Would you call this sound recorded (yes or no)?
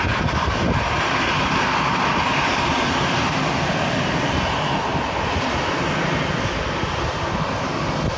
yes